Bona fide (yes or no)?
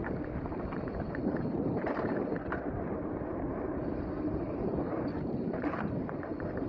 no